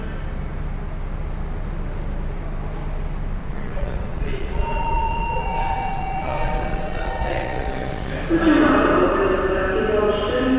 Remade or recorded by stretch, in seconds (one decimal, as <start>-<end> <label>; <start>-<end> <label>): 0.0-3.4 recorded; 3.4-8.1 remade; 8.1-10.6 recorded